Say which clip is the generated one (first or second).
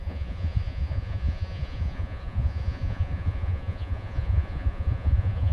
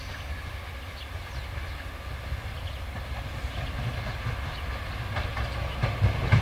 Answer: first